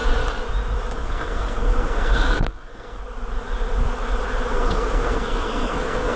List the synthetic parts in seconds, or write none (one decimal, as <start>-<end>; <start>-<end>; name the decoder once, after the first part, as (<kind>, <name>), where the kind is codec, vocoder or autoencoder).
0.9-3.0 (codec, SNAC); 4.5-6.2